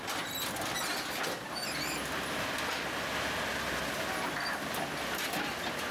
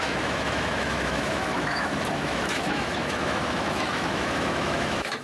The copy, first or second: second